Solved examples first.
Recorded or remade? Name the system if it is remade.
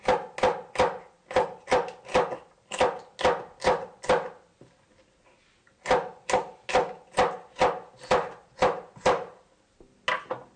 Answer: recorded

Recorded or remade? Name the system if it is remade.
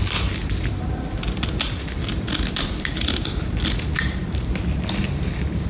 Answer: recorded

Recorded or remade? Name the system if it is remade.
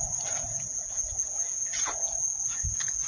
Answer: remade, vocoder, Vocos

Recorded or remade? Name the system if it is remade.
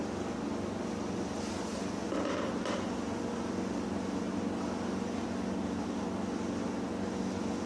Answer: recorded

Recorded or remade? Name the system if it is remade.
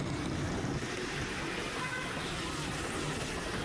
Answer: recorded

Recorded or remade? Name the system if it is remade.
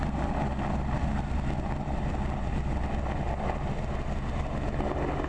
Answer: recorded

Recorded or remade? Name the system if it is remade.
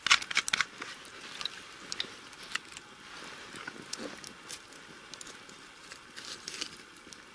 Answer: recorded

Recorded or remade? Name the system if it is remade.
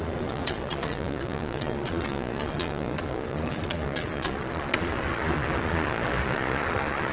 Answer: remade, vocoder, Vocos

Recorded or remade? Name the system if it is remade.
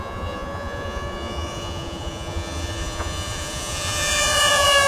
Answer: remade, vocoder, Vocos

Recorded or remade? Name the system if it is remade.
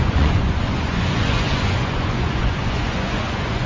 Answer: remade, vocoder, Vocos